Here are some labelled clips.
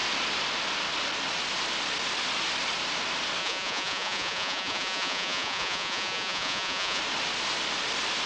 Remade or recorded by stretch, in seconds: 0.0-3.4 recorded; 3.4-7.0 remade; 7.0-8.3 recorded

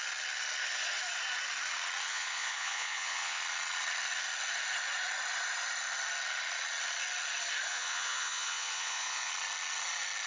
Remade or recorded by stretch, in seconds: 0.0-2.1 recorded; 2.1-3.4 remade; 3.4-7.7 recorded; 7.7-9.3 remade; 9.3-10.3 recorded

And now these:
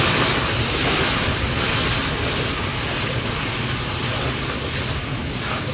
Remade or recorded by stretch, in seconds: 0.0-5.7 recorded

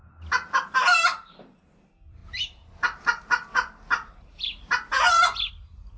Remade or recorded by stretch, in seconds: 0.0-6.0 recorded

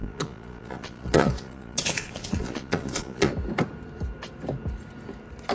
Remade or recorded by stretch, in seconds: 0.0-3.3 remade; 3.3-5.5 recorded

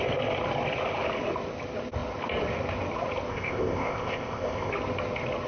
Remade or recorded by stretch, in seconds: 0.0-3.3 recorded; 3.3-4.7 remade; 4.7-5.5 recorded

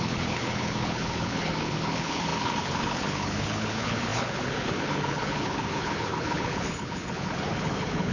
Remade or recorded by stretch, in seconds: 0.0-8.1 remade